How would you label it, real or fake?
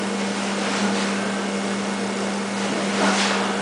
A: real